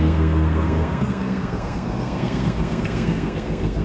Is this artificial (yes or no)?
yes